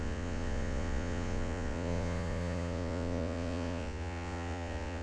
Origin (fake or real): fake